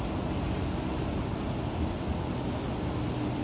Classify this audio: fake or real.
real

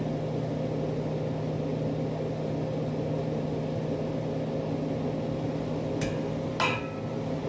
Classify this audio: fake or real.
real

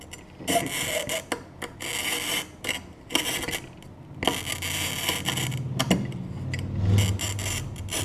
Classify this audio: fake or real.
real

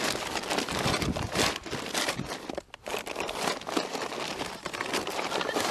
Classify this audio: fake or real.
fake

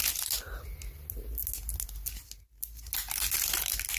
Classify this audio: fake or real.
real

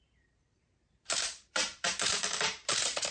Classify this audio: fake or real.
fake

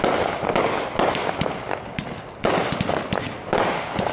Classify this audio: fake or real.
real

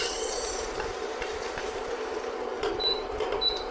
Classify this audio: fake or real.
fake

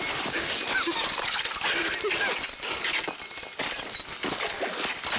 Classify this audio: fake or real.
real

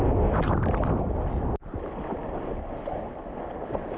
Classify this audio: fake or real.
real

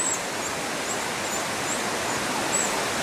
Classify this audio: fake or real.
real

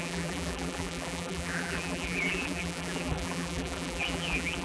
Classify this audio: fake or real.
fake